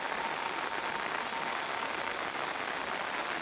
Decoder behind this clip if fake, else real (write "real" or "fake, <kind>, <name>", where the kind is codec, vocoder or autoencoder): real